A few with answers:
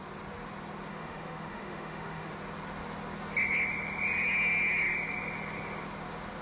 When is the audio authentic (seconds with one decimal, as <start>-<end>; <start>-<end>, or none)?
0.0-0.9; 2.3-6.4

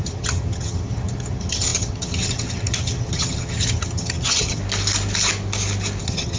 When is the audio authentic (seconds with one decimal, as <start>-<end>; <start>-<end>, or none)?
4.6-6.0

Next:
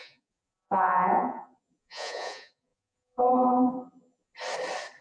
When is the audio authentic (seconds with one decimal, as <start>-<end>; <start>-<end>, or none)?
4.3-5.0

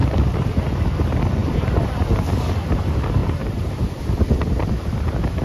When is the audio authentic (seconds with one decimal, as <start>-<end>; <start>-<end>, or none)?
0.0-1.4; 2.0-3.2; 4.0-5.4

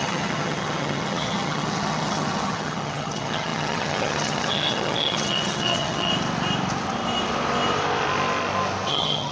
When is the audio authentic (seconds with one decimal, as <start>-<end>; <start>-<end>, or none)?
6.1-8.9